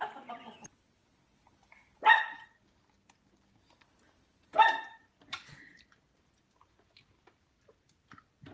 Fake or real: real